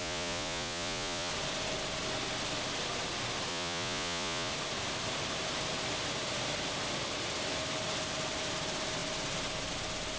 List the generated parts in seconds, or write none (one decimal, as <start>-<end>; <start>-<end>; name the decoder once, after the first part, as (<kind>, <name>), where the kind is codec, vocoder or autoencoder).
0.0-1.3 (vocoder, Vocos); 3.5-4.5